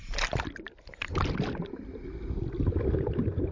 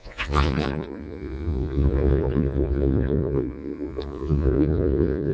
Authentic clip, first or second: first